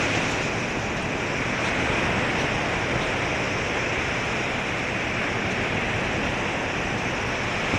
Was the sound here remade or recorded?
recorded